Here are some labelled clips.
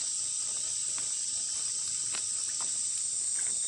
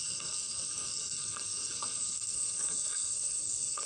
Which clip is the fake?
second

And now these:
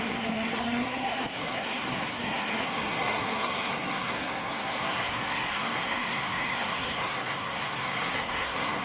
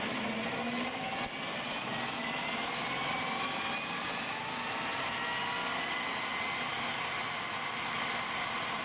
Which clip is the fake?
first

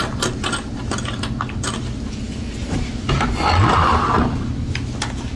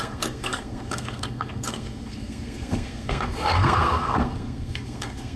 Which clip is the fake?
second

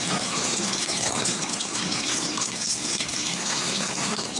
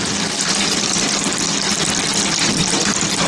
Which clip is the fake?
first